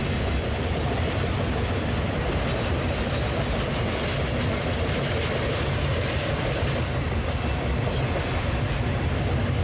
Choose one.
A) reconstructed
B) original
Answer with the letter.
B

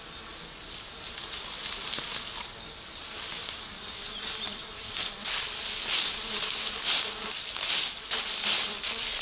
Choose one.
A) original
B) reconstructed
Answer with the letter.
A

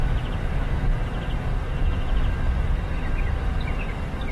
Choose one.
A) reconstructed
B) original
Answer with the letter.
B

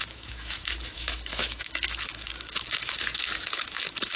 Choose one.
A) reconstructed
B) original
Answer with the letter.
A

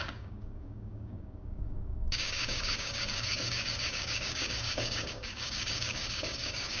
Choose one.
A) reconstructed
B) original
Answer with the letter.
A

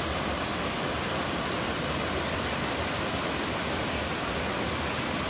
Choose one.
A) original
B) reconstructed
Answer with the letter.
A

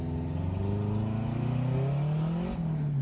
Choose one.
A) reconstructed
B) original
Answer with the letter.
B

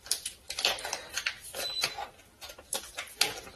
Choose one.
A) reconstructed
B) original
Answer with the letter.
B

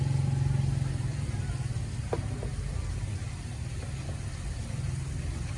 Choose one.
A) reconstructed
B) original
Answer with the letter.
B